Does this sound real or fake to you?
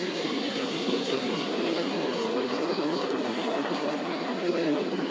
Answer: fake